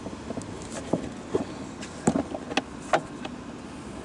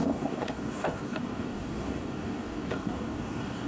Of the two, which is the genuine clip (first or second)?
first